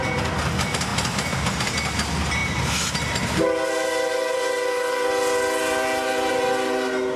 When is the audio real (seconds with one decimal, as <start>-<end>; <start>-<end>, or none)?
0.0-7.2